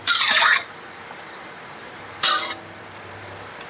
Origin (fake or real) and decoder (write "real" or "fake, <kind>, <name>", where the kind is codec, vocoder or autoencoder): fake, vocoder, BigVGAN v2